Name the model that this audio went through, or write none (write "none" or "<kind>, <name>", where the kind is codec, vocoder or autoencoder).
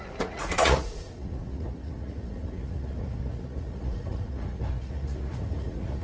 vocoder, Vocos